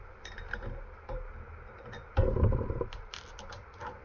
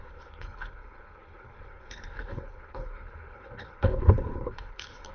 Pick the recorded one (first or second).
first